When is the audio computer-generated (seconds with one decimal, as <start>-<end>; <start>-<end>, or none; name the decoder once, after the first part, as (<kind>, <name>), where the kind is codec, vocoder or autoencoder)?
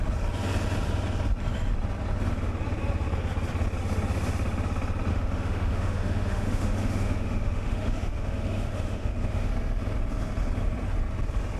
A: 5.1-9.5 (autoencoder, DAC-VAE)